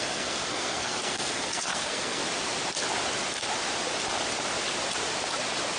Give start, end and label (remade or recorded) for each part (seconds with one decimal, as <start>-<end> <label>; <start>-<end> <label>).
0.0-2.2 remade; 2.2-5.8 recorded